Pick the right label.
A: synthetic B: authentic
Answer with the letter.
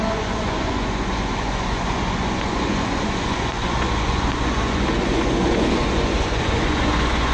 A